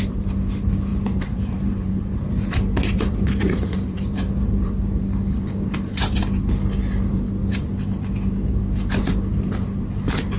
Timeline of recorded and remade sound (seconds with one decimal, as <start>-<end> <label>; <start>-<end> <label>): 0.0-0.9 recorded; 0.9-4.7 remade; 4.7-10.4 recorded